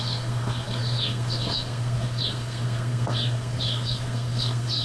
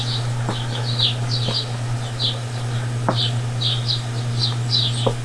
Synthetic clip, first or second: first